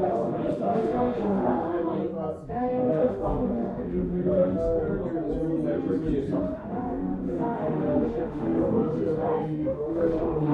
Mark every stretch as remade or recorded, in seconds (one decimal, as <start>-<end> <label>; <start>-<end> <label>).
0.0-2.0 remade; 2.0-2.5 recorded; 2.5-4.9 remade; 4.9-6.4 recorded; 6.4-10.5 remade